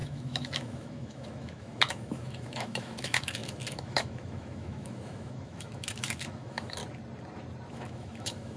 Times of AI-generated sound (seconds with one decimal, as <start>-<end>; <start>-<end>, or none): 0.0-6.8; 7.7-8.6